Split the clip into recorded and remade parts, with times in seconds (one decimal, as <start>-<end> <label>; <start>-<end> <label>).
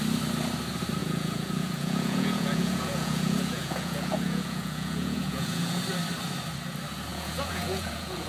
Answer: 0.0-1.0 recorded; 1.0-5.8 remade; 5.8-7.1 recorded; 7.1-8.3 remade